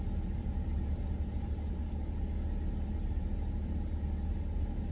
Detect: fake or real real